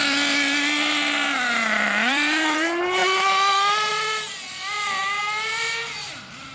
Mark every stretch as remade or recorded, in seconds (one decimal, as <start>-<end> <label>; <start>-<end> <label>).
0.0-6.5 remade